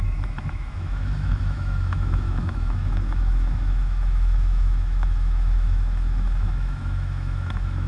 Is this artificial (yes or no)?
yes